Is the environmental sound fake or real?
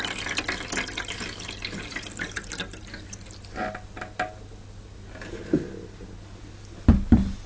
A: real